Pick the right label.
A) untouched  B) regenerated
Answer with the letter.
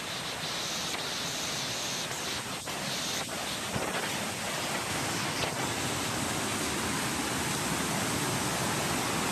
A